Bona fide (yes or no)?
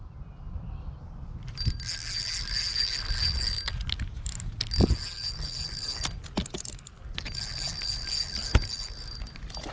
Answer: yes